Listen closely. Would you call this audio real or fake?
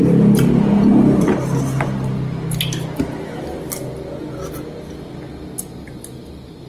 real